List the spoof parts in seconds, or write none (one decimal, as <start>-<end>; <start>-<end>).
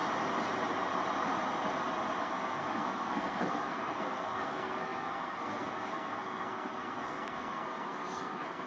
2.2-8.7